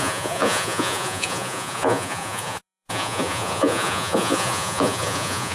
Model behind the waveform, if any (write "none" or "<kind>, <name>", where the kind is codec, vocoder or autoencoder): vocoder, Vocos